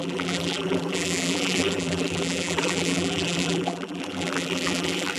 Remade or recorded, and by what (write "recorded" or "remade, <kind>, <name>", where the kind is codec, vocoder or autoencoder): remade, vocoder, BigVGAN v2